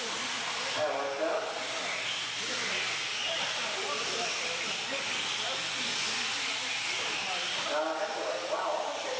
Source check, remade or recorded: recorded